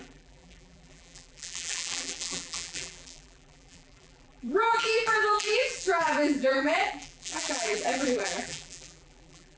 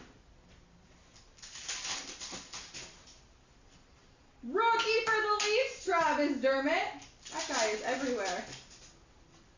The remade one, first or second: first